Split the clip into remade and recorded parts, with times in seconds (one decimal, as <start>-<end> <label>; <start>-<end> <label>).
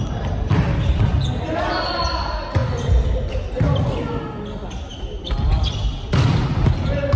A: 0.0-7.2 recorded